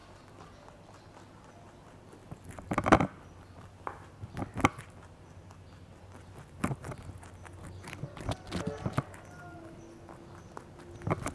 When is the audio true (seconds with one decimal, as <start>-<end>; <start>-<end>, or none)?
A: 0.0-11.3